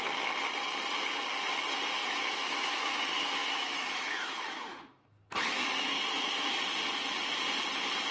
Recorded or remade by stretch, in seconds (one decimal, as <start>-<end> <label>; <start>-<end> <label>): 0.0-2.0 recorded; 2.0-6.6 remade; 6.6-8.1 recorded